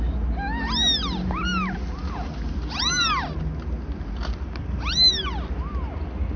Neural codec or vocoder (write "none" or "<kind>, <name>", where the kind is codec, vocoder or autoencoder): none